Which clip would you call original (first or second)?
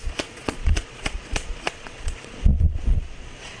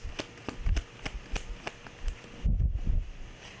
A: second